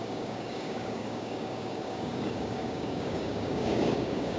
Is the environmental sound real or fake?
fake